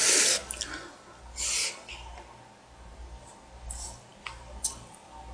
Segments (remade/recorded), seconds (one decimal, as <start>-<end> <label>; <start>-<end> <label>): 0.0-0.4 remade; 0.4-2.9 recorded; 2.9-5.3 remade